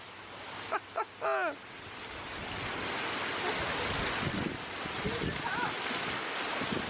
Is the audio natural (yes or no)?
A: yes